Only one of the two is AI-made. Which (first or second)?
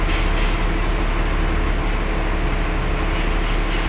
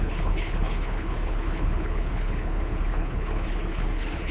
second